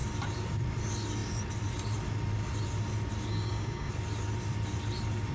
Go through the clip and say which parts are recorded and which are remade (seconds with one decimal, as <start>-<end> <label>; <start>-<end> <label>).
0.0-3.3 recorded; 3.3-3.9 remade; 3.9-5.3 recorded